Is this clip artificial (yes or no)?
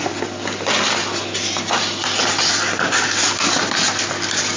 no